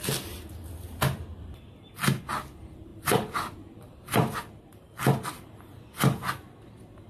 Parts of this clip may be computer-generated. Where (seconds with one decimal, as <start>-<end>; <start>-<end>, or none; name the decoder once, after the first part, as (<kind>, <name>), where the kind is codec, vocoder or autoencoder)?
2.9-4.9 (vocoder, BigVGAN v2)